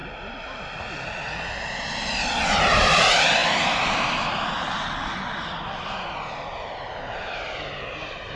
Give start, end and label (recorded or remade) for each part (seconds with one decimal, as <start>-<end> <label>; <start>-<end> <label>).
0.0-3.4 recorded; 3.4-7.0 remade; 7.0-8.4 recorded